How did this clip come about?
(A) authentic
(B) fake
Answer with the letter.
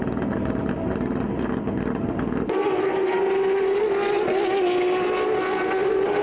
A